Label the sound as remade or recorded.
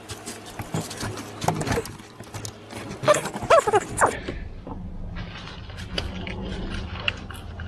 recorded